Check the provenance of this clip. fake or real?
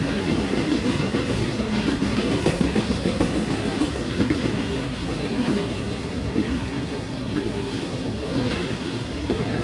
fake